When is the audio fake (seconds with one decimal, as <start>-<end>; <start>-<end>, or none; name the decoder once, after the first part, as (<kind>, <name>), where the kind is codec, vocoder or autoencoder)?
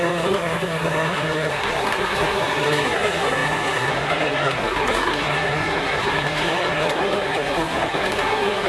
0.0-8.7 (codec, SNAC)